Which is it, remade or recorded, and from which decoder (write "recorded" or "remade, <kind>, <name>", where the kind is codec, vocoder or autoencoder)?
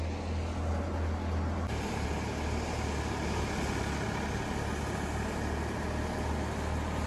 recorded